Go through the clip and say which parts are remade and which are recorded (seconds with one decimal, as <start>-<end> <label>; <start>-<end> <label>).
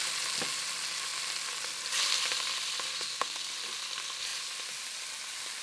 0.0-2.9 recorded; 2.9-3.5 remade; 3.5-5.6 recorded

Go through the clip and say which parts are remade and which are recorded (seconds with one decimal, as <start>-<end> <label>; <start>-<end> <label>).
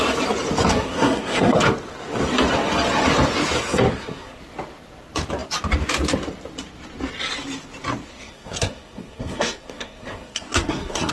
0.0-0.7 recorded; 0.7-1.6 remade; 1.6-3.9 recorded; 3.9-4.4 remade; 4.4-8.1 recorded; 8.1-11.1 remade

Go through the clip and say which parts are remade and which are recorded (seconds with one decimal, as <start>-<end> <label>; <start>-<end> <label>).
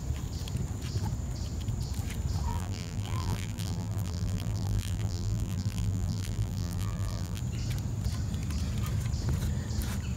0.0-2.5 recorded; 2.5-7.4 remade; 7.4-10.2 recorded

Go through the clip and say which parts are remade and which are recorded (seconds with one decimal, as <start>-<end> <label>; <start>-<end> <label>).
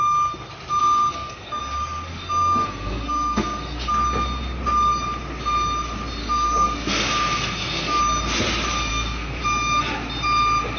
0.0-0.8 recorded; 0.8-1.6 remade; 1.6-2.1 recorded; 2.1-3.9 remade; 3.9-6.2 recorded; 6.2-8.0 remade; 8.0-8.9 recorded; 8.9-9.4 remade; 9.4-10.8 recorded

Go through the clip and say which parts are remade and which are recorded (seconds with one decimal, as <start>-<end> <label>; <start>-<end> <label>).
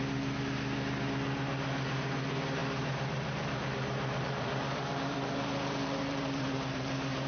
0.0-2.6 recorded; 2.6-7.3 remade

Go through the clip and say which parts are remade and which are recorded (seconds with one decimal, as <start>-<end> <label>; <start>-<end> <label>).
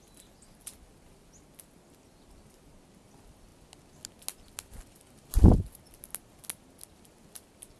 0.0-7.8 recorded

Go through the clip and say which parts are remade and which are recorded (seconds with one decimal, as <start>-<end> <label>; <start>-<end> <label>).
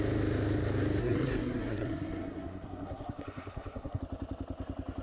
0.0-1.0 recorded; 1.0-4.0 remade; 4.0-5.0 recorded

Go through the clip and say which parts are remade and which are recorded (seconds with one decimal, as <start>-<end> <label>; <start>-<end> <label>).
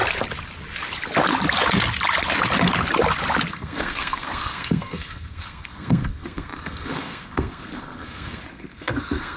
0.0-3.5 recorded; 3.5-9.4 remade